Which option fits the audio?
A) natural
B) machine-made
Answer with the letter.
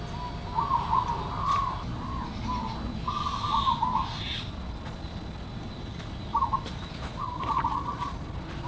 A